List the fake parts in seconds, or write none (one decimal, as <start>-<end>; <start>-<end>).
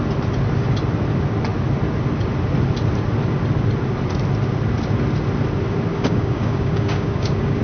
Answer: 5.9-7.6